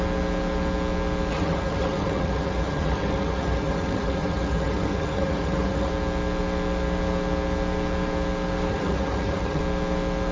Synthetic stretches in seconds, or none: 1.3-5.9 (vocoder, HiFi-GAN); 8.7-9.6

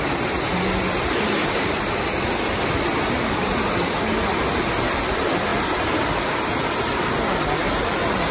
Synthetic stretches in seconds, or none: none

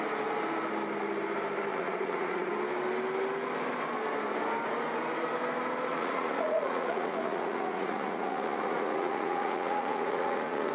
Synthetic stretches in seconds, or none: 1.7-2.5 (vocoder, Vocos); 5.9-10.7